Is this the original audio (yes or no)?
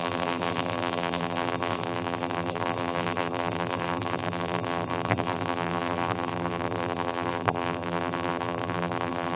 no